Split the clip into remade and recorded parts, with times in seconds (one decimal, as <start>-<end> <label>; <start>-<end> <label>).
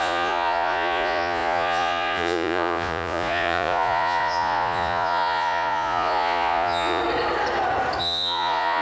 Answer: 0.0-7.0 remade; 7.0-8.0 recorded; 8.0-8.8 remade